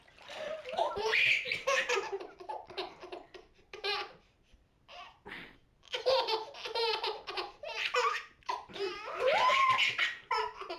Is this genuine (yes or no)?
no